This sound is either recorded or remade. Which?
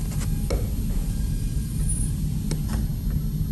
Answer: recorded